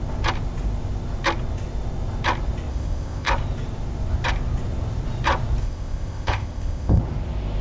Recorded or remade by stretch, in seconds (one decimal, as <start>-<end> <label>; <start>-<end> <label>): 0.0-2.7 recorded; 2.7-3.3 remade; 3.3-5.6 recorded; 5.6-7.0 remade; 7.0-7.6 recorded